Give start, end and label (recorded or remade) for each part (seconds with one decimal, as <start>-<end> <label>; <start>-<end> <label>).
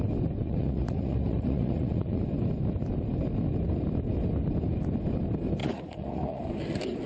0.0-0.4 recorded; 0.4-2.2 remade; 2.2-5.6 recorded; 5.6-6.4 remade; 6.4-7.1 recorded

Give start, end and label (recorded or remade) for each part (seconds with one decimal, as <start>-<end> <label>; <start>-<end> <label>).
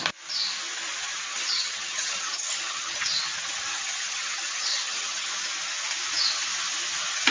0.0-1.3 recorded; 1.3-3.0 remade; 3.0-3.7 recorded; 3.7-5.3 remade; 5.3-7.3 recorded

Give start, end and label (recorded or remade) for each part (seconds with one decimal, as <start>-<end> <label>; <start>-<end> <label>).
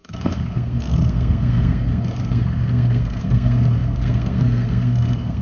0.0-5.4 remade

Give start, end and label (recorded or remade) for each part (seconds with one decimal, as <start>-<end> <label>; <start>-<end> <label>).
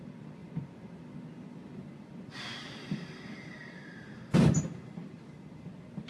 0.0-6.1 recorded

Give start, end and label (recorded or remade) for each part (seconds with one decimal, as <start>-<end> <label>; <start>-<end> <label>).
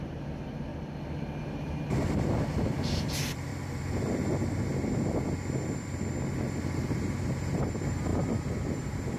0.0-0.7 remade; 0.7-1.4 recorded; 1.4-3.5 remade; 3.5-6.6 recorded; 6.6-9.2 remade